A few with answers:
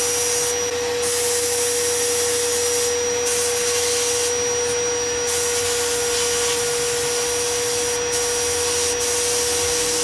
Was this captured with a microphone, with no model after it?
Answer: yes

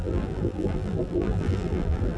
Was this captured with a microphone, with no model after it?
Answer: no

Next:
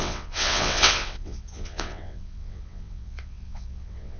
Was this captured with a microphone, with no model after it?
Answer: no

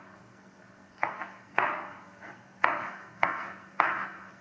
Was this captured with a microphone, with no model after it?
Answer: no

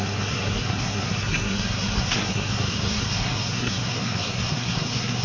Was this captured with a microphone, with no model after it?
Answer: no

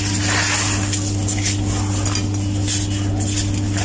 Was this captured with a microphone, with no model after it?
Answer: yes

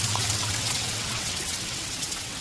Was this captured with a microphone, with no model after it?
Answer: no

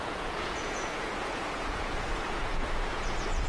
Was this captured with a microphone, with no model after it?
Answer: no